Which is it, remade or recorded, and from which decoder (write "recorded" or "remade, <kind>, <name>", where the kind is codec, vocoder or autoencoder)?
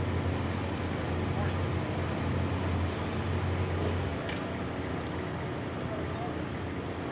recorded